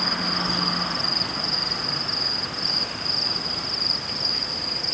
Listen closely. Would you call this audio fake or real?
real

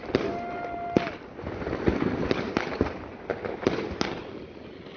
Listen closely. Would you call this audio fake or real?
real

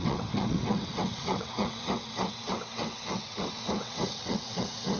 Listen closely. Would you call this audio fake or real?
fake